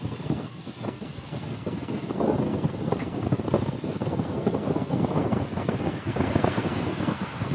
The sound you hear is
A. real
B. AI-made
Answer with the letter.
B